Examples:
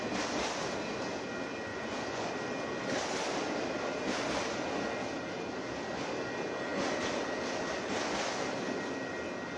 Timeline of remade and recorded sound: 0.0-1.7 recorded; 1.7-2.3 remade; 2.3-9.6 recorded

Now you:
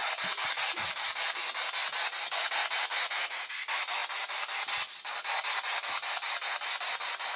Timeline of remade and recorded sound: 0.0-2.9 recorded; 2.9-3.5 remade; 3.5-7.4 recorded